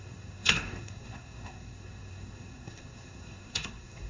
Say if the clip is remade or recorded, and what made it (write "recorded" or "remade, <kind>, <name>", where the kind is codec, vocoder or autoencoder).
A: remade, codec, SNAC